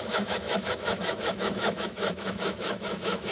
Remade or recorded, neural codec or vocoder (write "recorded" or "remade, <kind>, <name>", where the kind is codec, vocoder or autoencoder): remade, autoencoder, DAC-VAE